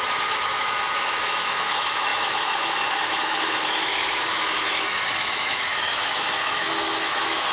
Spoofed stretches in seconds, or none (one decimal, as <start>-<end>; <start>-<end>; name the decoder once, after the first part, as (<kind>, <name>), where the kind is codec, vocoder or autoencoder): 0.0-7.5 (autoencoder, DAC-VAE)